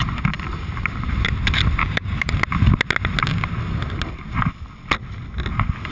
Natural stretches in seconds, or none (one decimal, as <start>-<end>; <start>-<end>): 0.0-1.8; 2.3-5.9